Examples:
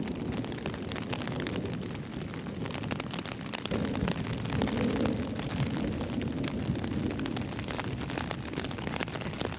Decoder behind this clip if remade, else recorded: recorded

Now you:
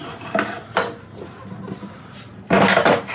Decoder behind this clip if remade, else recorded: recorded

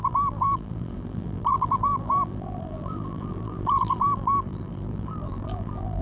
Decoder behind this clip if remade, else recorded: remade, vocoder, BigVGAN v2